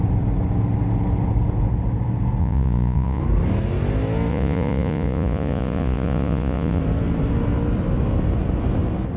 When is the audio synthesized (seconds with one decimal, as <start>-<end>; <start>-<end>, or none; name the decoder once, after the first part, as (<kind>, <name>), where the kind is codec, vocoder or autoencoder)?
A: 2.4-3.2 (vocoder, Vocos); 4.3-6.8